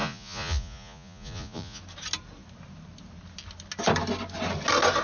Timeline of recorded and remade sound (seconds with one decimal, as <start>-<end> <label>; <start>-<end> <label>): 0.0-1.8 remade; 1.8-5.0 recorded